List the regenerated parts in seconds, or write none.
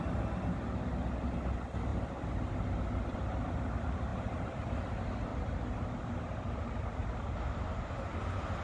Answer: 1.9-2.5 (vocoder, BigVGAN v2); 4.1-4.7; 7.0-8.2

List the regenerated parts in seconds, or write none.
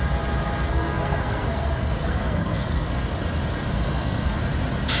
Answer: 0.7-3.1 (codec, SNAC); 3.7-4.4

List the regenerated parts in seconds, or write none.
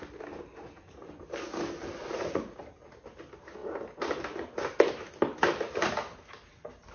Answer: 2.0-2.6 (vocoder, Vocos)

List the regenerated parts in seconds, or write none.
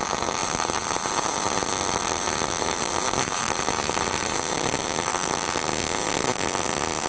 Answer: 0.0-5.1 (vocoder, BigVGAN v2)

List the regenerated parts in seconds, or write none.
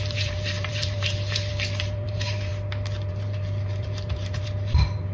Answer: 0.0-2.5 (vocoder, BigVGAN v2); 3.1-5.1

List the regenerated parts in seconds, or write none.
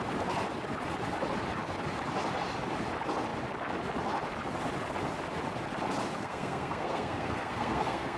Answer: 6.2-8.2 (codec, SNAC)